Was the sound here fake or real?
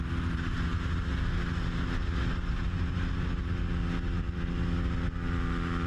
real